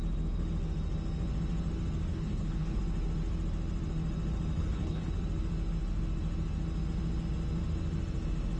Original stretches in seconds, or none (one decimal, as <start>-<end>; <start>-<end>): 0.0-2.1; 2.8-4.6; 5.1-8.6